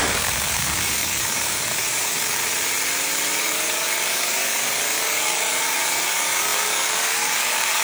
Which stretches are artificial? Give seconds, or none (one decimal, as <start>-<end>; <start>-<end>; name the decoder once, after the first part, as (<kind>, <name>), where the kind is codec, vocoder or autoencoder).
0.0-2.4 (codec, DAC); 3.4-7.8